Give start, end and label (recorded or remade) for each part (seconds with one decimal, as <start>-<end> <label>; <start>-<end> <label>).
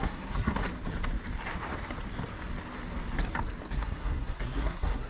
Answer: 0.0-0.6 remade; 0.6-3.7 recorded; 3.7-5.1 remade